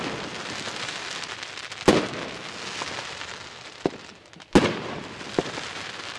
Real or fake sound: real